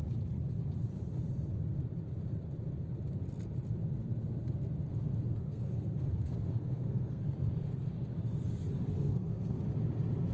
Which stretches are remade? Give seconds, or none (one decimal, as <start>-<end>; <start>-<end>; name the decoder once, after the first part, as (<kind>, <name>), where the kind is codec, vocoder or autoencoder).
5.3-7.9 (codec, SNAC); 8.9-9.6